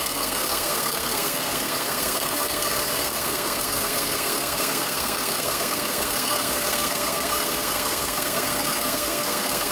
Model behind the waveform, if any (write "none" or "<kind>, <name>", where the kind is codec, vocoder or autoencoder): codec, SNAC